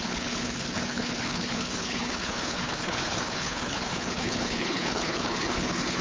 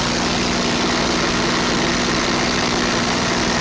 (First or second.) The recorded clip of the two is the second